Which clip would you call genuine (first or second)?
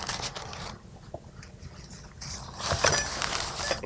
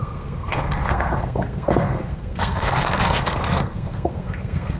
first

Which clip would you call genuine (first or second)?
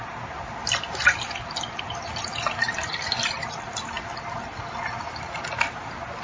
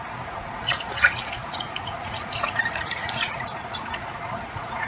first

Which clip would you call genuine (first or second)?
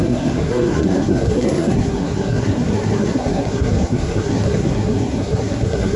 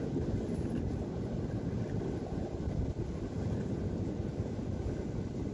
second